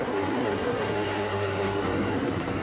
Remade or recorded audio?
remade